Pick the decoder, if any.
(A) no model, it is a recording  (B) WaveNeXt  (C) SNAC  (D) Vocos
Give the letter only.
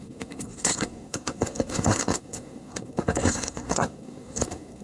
C